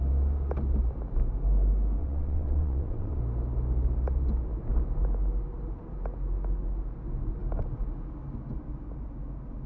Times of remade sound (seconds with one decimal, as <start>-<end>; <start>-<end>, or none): 2.0-3.2